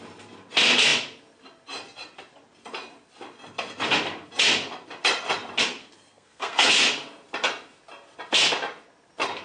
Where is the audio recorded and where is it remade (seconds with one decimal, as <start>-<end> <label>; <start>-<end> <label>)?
0.0-5.8 recorded; 5.8-6.7 remade; 6.7-9.4 recorded